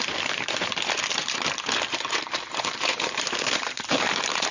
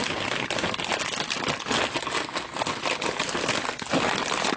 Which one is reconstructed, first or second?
first